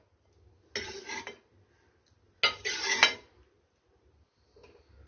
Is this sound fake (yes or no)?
no